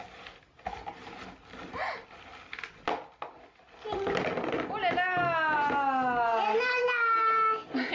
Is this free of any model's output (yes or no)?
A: yes